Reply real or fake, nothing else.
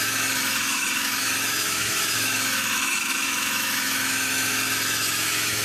fake